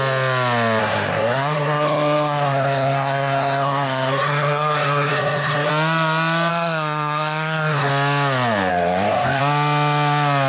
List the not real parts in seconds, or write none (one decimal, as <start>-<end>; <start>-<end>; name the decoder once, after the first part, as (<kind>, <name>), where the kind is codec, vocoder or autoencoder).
0.8-5.7 (codec, SNAC); 6.5-7.9; 8.7-9.4